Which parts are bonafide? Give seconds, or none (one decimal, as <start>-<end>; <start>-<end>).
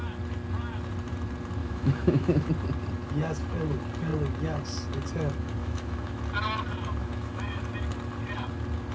0.0-1.6; 2.5-5.6; 6.2-7.0; 7.6-8.9